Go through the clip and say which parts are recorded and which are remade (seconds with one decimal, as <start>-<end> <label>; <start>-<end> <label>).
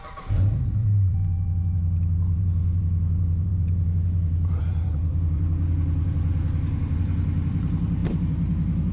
0.0-8.9 remade